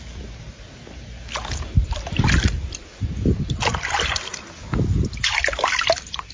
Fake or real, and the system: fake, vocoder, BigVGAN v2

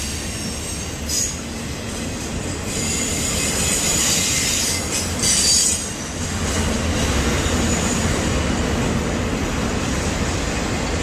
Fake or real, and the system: real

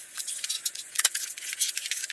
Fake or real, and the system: fake, vocoder, Vocos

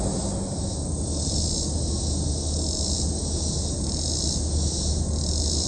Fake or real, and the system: real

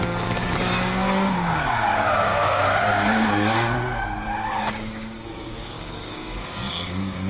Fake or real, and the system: fake, codec, DAC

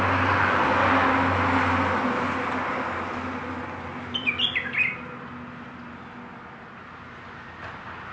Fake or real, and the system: real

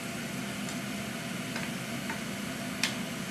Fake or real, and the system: real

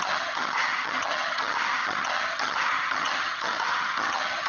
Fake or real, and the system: fake, vocoder, HiFi-GAN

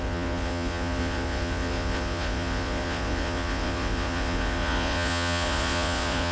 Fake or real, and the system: fake, vocoder, Vocos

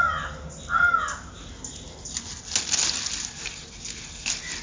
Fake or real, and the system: real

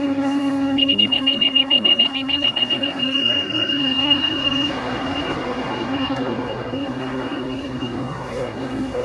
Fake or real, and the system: fake, codec, SNAC